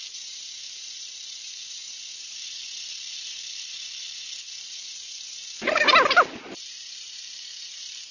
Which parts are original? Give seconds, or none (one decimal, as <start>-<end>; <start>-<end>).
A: none